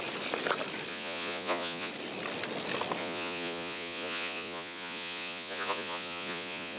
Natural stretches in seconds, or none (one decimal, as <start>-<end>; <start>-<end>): 0.0-0.9; 1.9-3.0

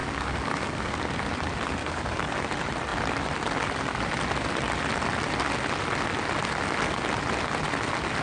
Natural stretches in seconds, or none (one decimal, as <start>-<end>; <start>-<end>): 1.0-1.8; 2.3-8.2

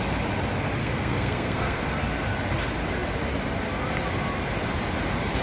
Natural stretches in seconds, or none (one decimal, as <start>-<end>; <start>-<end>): 0.0-0.8; 1.8-5.4

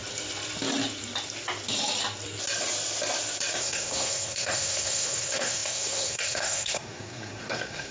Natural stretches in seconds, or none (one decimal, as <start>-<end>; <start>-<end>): 0.0-3.6

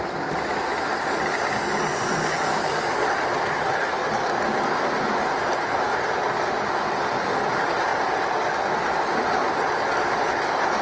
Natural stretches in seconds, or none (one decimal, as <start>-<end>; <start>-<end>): 0.0-1.9; 2.5-10.8

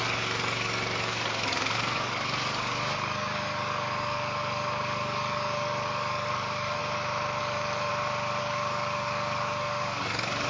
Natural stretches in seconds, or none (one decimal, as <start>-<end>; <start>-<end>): 6.8-7.4; 7.9-8.4